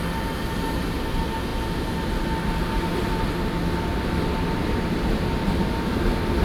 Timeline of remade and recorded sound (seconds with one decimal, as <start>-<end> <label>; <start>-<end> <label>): 0.0-6.4 recorded